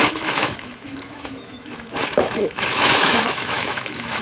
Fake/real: fake